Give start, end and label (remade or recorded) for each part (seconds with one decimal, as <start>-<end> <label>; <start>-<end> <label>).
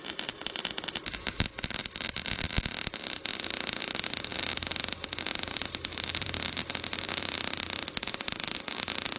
0.0-3.3 remade; 3.3-3.8 recorded; 3.8-9.2 remade